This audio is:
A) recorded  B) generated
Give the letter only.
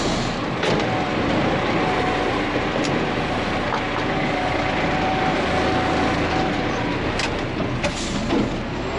A